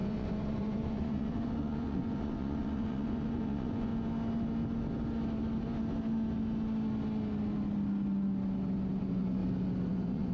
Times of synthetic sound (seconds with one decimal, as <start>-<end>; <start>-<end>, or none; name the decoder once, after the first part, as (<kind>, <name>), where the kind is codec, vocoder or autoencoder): 0.0-3.9 (vocoder, Vocos); 9.0-9.4; 9.9-10.3